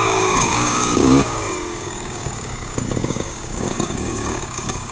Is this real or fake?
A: fake